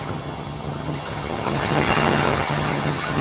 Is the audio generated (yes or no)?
yes